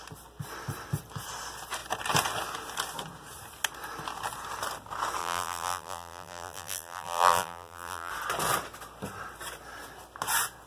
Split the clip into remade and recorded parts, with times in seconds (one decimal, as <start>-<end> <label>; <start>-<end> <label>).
0.0-5.2 recorded; 5.2-8.1 remade; 8.1-10.7 recorded